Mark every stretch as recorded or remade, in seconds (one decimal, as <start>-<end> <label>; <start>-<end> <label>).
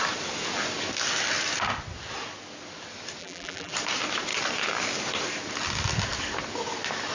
0.0-3.2 recorded; 3.2-3.7 remade; 3.7-7.1 recorded